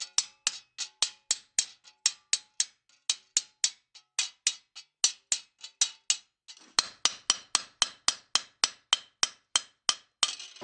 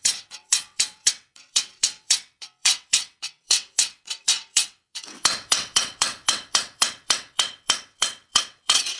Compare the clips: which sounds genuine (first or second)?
first